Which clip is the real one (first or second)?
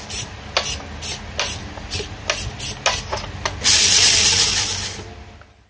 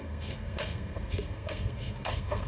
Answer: first